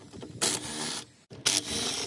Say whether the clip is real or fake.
real